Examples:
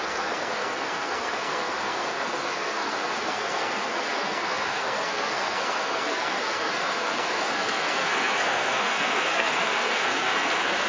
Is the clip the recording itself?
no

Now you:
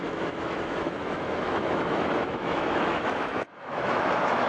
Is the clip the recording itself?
no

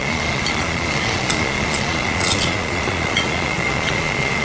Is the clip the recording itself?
no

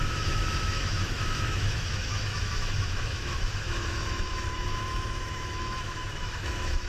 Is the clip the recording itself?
no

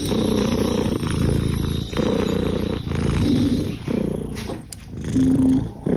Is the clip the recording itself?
yes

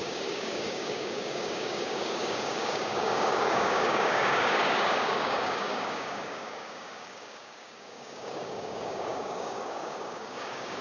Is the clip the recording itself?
no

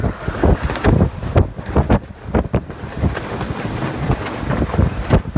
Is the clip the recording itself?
yes